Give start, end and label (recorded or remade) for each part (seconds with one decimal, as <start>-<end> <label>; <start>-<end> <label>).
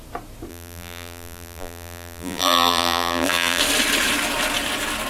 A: 0.0-0.5 recorded; 0.5-3.6 remade; 3.6-5.1 recorded